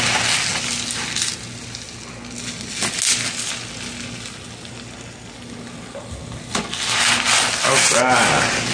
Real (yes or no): yes